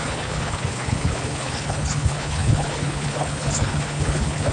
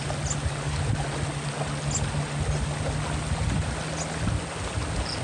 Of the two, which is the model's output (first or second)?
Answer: first